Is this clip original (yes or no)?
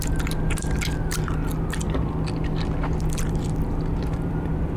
no